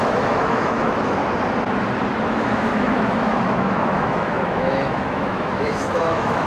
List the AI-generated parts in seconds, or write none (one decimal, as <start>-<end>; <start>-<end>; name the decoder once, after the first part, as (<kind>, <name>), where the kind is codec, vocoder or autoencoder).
0.0-1.2 (autoencoder, DAC-VAE); 2.2-6.5